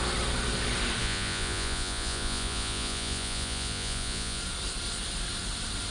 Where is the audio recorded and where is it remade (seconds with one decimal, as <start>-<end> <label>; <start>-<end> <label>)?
0.0-1.0 recorded; 1.0-4.4 remade; 4.4-5.9 recorded